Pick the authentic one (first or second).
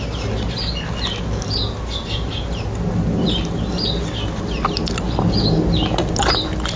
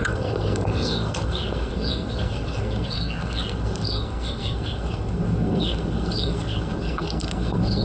first